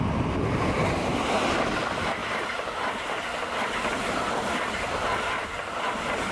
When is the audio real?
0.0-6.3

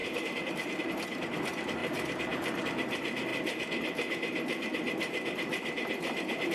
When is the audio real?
0.9-1.8; 2.6-6.5

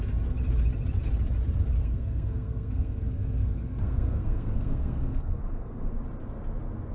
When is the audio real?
0.0-1.8; 5.9-6.9

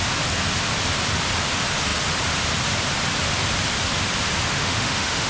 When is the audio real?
0.0-4.5

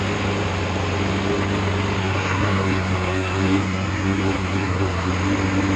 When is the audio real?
0.0-2.0; 5.1-5.8

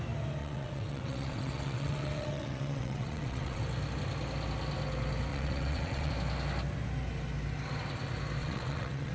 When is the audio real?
0.0-0.4; 3.6-5.3; 6.1-8.4